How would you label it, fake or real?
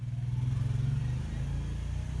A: real